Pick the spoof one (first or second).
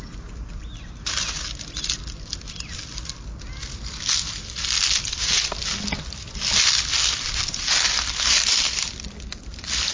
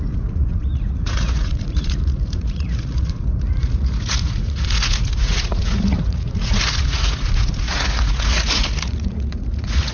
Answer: second